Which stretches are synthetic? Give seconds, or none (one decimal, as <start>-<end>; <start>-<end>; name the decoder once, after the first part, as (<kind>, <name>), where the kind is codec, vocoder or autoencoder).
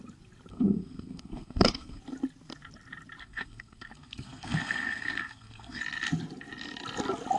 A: 0.5-2.0 (codec, SNAC); 3.2-5.8